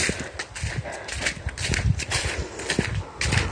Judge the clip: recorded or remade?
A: recorded